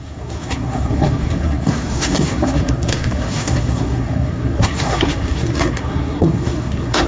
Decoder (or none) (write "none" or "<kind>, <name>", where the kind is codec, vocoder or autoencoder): codec, SNAC